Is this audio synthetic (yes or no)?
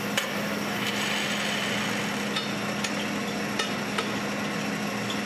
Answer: no